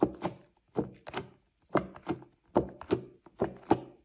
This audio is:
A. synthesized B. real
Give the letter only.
B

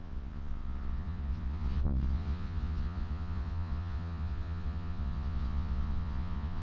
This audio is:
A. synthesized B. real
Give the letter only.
A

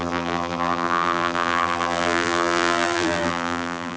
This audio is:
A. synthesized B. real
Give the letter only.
A